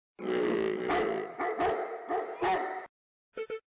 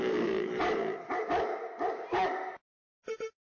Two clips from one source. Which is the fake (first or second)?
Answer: second